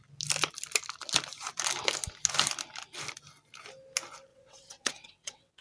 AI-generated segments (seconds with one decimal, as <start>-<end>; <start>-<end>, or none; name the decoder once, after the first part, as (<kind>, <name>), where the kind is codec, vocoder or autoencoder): 4.3-5.6 (vocoder, WaveNeXt)